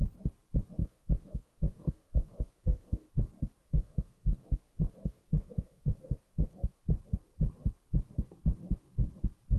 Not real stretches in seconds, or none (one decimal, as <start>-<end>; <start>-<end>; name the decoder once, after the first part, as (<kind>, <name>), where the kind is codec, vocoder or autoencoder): 0.8-3.1 (codec, SNAC); 3.6-6.8